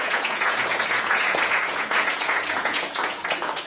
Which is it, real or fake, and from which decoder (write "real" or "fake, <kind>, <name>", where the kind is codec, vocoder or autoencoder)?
fake, vocoder, Vocos